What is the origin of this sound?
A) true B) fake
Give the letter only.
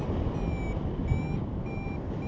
A